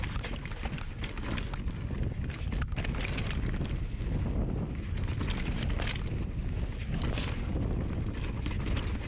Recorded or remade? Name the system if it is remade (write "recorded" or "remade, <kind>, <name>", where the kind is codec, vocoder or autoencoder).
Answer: recorded